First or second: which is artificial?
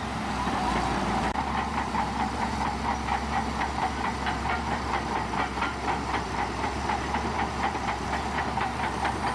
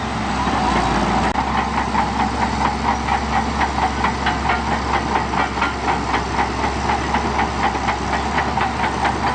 first